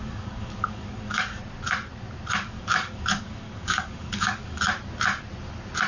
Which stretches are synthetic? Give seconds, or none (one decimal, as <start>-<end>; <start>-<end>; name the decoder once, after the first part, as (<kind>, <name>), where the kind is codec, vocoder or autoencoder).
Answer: 0.0-1.4 (codec, DAC); 2.3-4.7